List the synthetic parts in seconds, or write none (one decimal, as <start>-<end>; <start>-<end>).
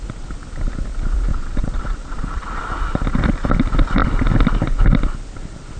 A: 1.3-2.6